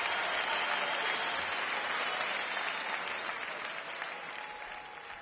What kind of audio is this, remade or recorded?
recorded